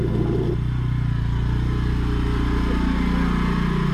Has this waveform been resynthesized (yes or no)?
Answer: no